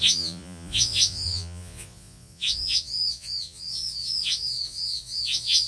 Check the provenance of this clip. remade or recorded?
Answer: remade